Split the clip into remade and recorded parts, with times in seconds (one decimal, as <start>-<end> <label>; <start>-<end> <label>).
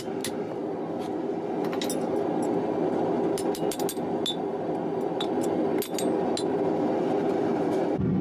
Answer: 0.0-8.2 recorded